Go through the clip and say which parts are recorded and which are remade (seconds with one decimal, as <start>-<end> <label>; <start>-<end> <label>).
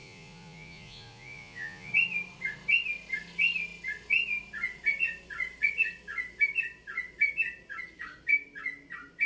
0.0-1.9 remade; 1.9-9.3 recorded